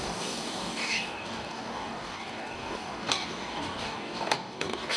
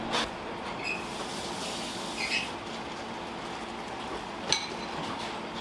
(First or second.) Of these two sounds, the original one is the second